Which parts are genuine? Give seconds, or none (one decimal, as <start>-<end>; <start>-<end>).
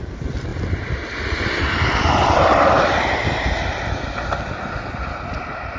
0.0-5.8